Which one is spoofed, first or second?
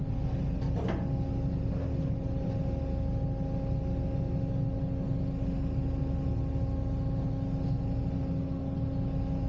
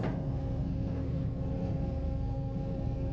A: second